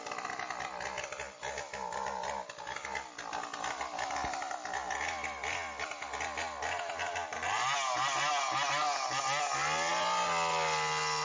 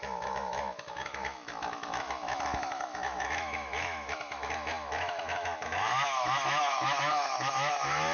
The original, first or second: first